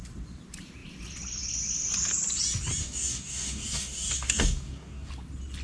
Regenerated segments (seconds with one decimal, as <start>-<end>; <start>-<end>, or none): 2.8-5.1